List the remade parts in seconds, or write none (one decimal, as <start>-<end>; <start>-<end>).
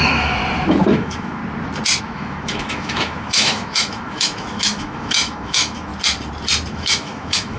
0.0-0.4; 0.9-1.4; 2.0-5.9; 6.7-7.6